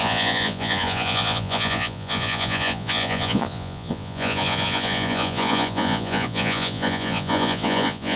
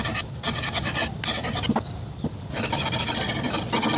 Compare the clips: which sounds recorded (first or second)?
second